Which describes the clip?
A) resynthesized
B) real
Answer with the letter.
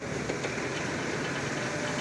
B